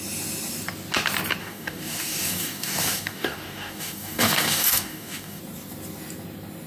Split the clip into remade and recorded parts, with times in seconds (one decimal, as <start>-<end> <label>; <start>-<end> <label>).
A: 0.0-1.4 recorded; 1.4-5.4 remade; 5.4-6.7 recorded